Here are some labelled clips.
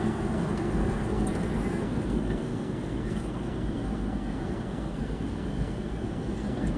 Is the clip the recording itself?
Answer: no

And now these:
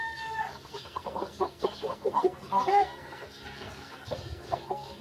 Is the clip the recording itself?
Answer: no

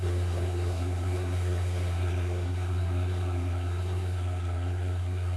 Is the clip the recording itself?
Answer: no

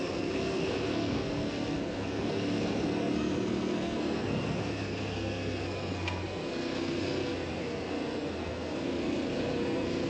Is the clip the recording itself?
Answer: no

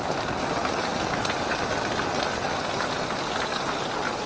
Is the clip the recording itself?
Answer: yes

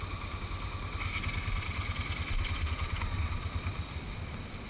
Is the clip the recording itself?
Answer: yes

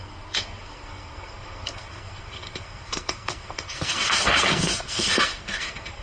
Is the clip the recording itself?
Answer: no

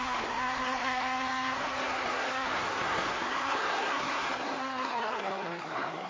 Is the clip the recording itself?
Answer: no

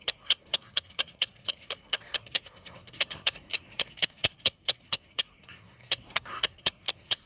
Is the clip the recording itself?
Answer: no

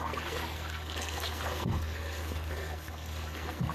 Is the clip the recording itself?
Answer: no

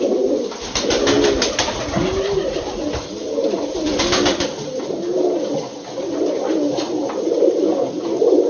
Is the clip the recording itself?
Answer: yes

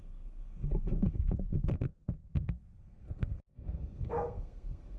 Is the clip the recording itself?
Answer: no